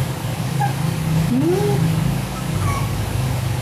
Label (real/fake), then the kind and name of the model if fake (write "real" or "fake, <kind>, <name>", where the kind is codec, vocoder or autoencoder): fake, codec, DAC